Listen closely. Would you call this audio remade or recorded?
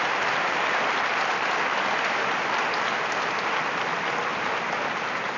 recorded